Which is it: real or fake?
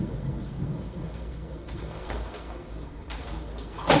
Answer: fake